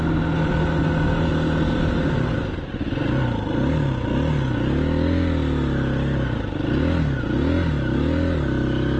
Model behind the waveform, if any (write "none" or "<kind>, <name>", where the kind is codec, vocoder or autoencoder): none